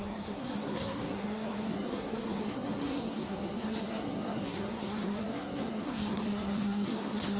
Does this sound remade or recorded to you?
remade